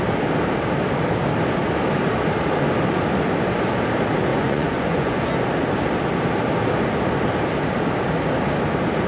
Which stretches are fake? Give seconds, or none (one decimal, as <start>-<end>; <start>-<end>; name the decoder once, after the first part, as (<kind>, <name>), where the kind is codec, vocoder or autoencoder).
4.3-5.3 (vocoder, Vocos)